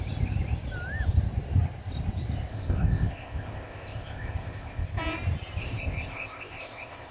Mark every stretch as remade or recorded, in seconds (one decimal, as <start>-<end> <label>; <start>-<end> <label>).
0.0-2.5 recorded; 2.5-4.9 remade; 4.9-5.6 recorded; 5.6-7.1 remade